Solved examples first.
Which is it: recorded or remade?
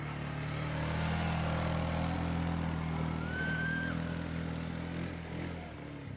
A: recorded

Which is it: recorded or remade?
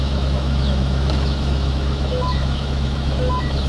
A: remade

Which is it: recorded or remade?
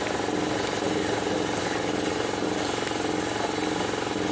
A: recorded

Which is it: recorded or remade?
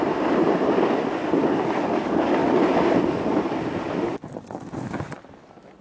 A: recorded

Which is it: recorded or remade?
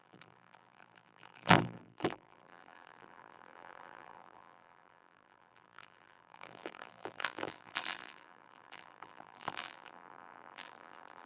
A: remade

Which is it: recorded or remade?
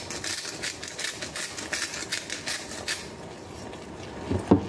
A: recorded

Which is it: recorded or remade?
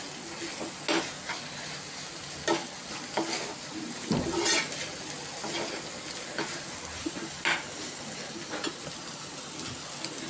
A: recorded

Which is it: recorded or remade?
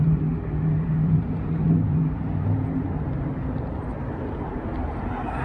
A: remade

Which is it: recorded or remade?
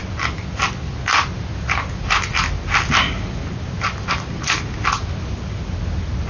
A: recorded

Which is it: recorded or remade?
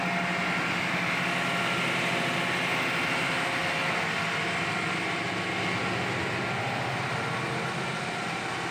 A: recorded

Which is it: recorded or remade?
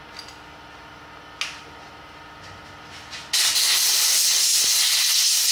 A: recorded